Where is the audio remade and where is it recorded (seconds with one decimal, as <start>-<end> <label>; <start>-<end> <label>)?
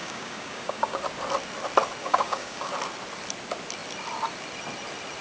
0.0-1.0 remade; 1.0-2.0 recorded; 2.0-2.7 remade; 2.7-5.2 recorded